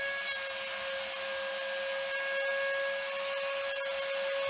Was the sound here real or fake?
real